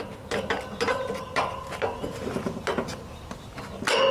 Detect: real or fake real